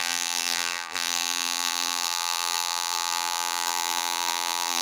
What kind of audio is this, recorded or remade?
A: remade